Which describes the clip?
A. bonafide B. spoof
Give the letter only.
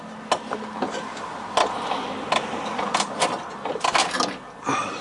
A